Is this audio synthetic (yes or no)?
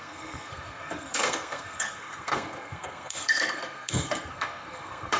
yes